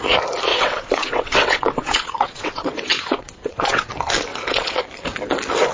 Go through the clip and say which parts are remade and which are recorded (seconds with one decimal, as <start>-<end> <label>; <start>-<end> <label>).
0.0-0.5 recorded; 0.5-3.9 remade; 3.9-4.3 recorded; 4.3-4.8 remade; 4.8-5.7 recorded